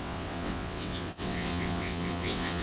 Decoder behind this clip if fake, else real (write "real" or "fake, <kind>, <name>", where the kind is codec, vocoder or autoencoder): fake, vocoder, WaveNeXt